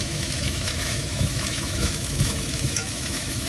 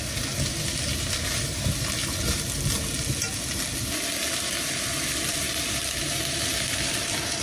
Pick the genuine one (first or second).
second